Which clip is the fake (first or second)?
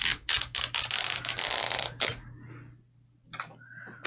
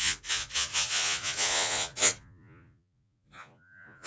second